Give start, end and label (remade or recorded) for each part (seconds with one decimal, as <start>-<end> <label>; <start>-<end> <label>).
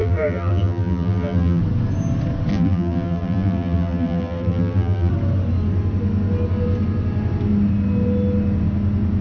0.0-1.6 remade; 1.6-2.5 recorded; 2.5-5.1 remade; 5.1-9.2 recorded